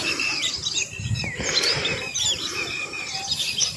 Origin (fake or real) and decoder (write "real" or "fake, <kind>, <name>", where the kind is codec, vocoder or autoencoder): fake, vocoder, BigVGAN v2